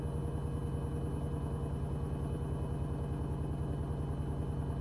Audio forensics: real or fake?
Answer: real